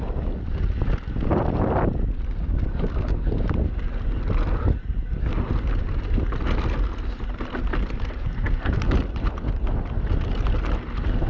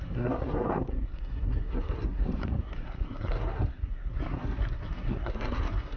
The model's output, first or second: second